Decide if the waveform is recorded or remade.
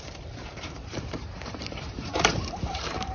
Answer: remade